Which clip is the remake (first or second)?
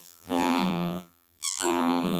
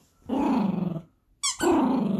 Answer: first